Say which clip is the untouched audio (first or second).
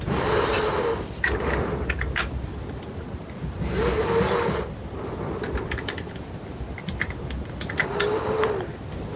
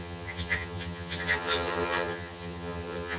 first